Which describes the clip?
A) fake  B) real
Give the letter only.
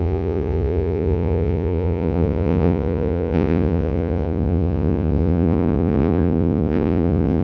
A